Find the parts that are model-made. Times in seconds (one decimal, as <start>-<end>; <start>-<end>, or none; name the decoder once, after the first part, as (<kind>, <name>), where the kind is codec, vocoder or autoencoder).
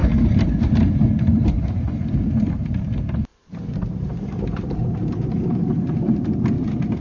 0.0-2.9 (vocoder, BigVGAN v2); 3.3-6.2